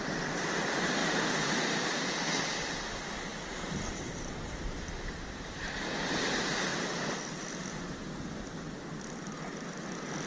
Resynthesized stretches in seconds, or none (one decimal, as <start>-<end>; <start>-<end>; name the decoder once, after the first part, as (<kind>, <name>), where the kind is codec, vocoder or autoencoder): 1.0-2.0 (vocoder, BigVGAN v2); 3.3-6.3